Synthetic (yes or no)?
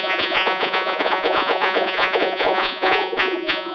yes